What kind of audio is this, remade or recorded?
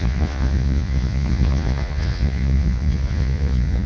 remade